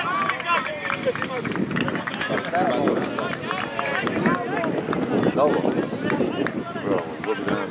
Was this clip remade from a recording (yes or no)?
no